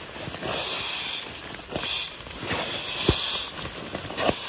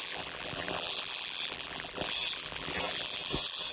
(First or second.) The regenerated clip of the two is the second